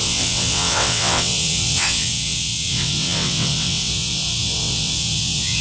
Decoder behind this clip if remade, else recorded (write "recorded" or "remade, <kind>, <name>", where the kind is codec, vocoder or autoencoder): remade, vocoder, WaveNeXt